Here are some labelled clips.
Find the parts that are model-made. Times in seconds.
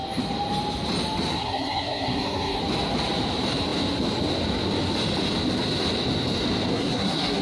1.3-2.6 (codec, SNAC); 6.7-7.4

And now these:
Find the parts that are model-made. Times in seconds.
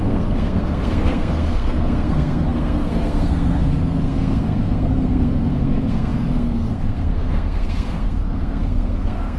0.0-9.4 (codec, SNAC)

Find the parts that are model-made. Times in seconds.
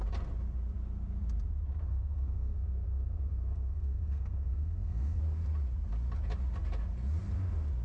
1.9-5.2 (codec, SNAC)